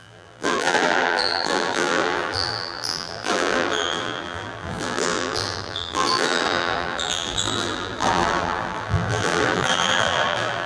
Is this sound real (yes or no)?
no